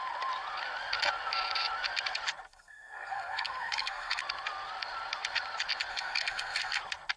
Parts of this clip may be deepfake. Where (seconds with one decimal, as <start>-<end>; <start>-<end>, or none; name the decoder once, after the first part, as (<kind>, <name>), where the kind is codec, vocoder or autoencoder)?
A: 2.5-4.2 (codec, SNAC); 5.9-6.8